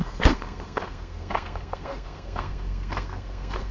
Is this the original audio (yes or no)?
no